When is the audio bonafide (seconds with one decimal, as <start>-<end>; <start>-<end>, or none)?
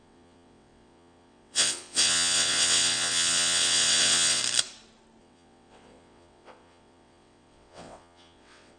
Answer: 4.4-5.2